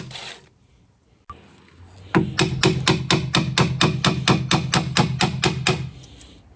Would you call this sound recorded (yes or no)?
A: yes